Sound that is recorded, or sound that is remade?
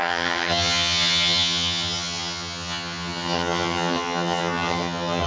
remade